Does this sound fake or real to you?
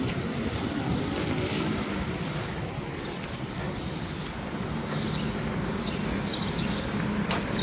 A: real